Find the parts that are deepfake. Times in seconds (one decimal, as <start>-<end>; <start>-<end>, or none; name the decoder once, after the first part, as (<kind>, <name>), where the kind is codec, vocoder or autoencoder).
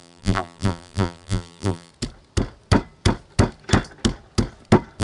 0.0-1.9 (vocoder, BigVGAN v2)